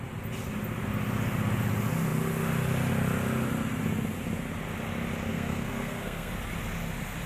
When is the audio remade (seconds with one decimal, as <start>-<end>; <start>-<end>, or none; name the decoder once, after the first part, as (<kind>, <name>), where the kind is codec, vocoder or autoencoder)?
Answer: 5.3-6.3 (codec, SNAC)